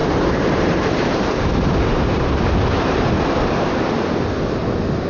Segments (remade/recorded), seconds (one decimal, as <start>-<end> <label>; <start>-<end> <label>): 0.0-3.1 remade; 3.1-5.1 recorded